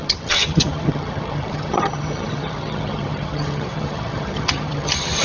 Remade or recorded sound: remade